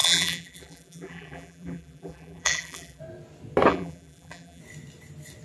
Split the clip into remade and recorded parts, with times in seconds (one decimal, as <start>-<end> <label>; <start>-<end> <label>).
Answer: 0.0-3.0 remade; 3.0-3.7 recorded; 3.7-4.6 remade; 4.6-5.4 recorded